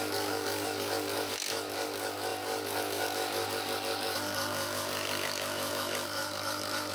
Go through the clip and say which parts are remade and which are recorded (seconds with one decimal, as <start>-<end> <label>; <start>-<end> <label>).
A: 0.0-6.9 remade